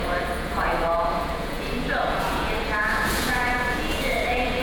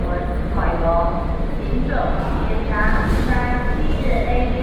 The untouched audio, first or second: second